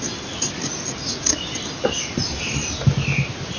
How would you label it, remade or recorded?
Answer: recorded